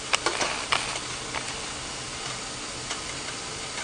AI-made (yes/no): no